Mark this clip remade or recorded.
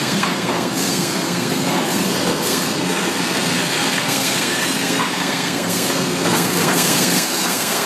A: remade